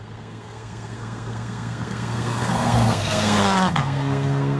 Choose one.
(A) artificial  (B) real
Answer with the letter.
A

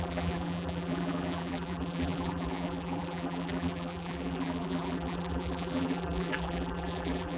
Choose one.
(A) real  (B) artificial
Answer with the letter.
B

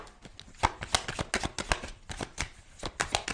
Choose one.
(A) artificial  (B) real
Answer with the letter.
B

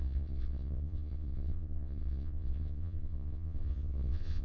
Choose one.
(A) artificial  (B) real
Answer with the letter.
A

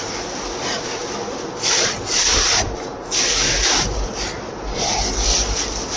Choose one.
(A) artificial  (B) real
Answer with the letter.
B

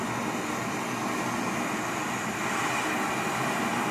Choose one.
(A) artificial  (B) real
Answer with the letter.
B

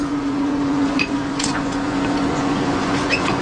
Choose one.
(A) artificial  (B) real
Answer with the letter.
A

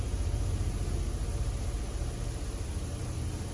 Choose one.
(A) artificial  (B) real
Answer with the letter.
B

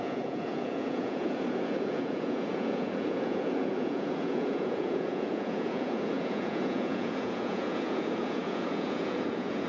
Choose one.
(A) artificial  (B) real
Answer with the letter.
A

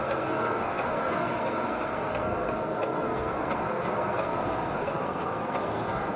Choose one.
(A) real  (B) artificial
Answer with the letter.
B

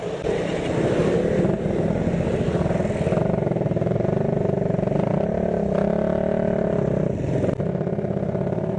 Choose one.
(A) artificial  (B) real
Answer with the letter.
B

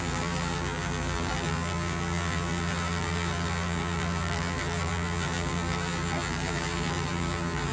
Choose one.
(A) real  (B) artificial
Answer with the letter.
B